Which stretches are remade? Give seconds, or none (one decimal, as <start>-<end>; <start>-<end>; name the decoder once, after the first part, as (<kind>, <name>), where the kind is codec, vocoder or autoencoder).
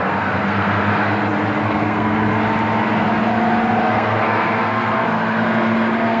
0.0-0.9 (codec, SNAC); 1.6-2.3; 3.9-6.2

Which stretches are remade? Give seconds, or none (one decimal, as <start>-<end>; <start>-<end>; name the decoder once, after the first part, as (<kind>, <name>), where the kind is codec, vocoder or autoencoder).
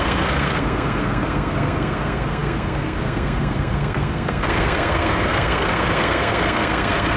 0.0-7.2 (codec, SNAC)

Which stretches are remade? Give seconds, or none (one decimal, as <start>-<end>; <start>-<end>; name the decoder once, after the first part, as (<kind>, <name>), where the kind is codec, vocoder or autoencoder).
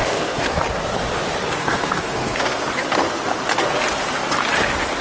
0.0-0.6 (codec, SNAC); 1.6-2.6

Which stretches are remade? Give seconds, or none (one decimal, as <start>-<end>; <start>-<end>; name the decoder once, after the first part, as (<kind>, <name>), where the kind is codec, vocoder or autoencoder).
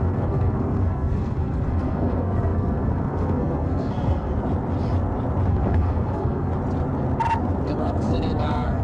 0.0-4.3 (codec, SNAC); 5.5-6.5; 7.8-8.8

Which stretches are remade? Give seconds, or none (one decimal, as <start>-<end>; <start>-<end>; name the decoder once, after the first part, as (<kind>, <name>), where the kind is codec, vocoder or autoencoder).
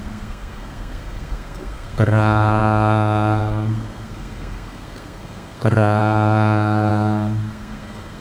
0.0-8.2 (codec, SNAC)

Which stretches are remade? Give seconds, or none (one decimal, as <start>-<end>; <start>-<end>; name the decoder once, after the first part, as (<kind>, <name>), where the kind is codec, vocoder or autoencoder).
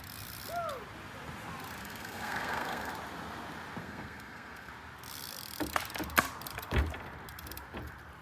1.8-2.9 (codec, SNAC); 3.8-4.7